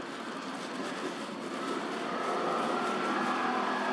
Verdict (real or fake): real